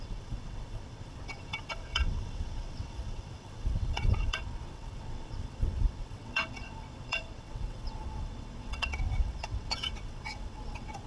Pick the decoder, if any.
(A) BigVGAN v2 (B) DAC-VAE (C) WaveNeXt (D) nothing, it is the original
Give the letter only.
C